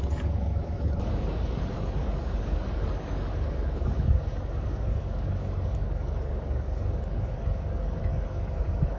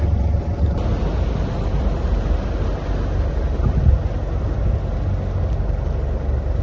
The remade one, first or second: first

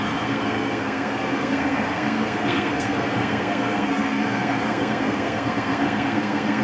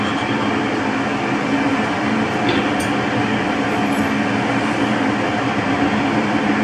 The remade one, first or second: first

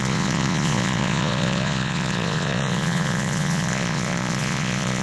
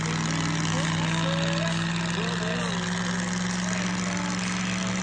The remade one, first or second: first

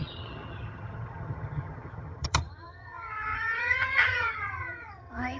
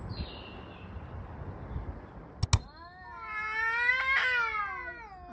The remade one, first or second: first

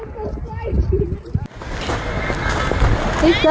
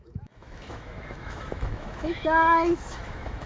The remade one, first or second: second